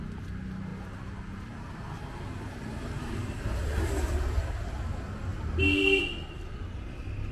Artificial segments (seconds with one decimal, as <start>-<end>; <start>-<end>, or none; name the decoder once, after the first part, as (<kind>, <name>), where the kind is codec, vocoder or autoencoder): none